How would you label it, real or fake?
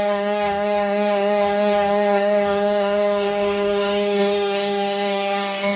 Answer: fake